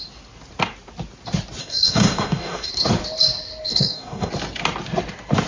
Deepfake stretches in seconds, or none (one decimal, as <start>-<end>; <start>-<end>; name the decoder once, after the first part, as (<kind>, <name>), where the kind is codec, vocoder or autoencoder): 1.6-2.7 (codec, DAC); 3.7-4.3